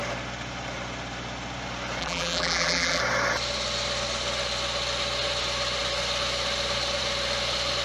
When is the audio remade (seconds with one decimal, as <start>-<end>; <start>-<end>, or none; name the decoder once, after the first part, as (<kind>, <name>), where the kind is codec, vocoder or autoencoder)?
2.0-3.0 (vocoder, BigVGAN v2)